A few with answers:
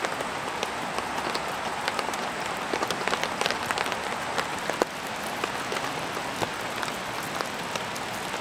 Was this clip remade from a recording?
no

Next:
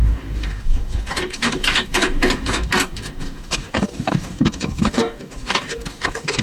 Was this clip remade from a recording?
yes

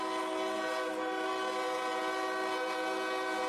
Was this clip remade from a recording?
no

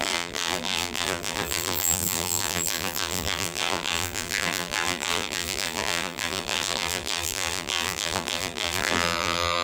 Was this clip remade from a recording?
yes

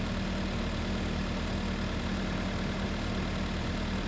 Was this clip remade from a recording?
no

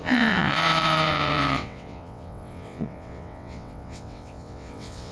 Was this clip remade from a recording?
yes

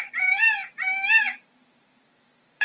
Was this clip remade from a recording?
yes